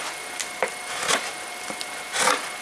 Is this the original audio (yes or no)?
no